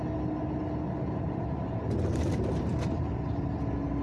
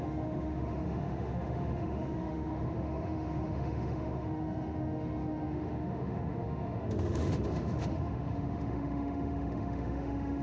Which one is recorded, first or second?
first